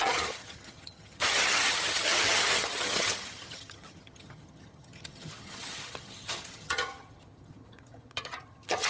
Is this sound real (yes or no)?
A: no